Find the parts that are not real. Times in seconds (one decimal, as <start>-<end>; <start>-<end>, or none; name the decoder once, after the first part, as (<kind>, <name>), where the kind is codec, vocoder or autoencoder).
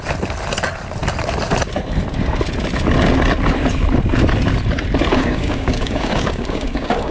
5.1-7.1 (codec, DAC)